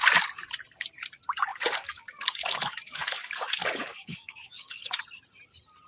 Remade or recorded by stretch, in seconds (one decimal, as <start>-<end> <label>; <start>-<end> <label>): 0.0-1.5 recorded; 1.5-5.0 remade; 5.0-5.9 recorded